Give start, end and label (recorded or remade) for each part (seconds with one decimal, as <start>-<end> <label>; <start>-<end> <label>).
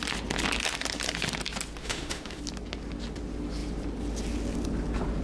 0.0-1.8 recorded; 1.8-2.4 remade; 2.4-5.2 recorded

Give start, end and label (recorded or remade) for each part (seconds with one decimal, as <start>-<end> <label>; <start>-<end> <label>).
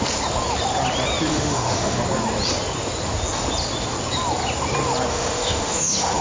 0.0-1.3 recorded; 1.3-2.0 remade; 2.0-5.1 recorded; 5.1-6.2 remade